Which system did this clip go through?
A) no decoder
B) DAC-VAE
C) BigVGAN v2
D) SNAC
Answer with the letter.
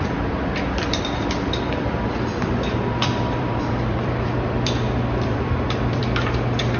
C